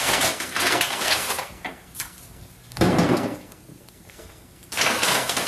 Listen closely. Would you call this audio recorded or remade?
remade